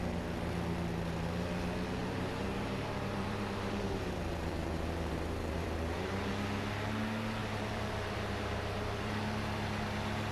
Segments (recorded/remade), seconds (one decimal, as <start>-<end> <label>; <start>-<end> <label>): 0.0-2.0 recorded; 2.0-6.3 remade; 6.3-7.4 recorded; 7.4-9.1 remade; 9.1-10.3 recorded